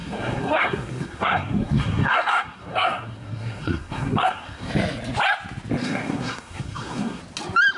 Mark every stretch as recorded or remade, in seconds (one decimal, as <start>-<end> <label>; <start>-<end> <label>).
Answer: 0.0-4.7 remade; 4.7-5.8 recorded; 5.8-7.2 remade; 7.2-7.8 recorded